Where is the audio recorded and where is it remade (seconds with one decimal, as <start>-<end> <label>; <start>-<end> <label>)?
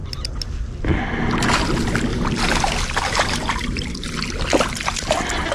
0.0-0.7 remade; 0.7-2.1 recorded; 2.1-4.1 remade; 4.1-5.5 recorded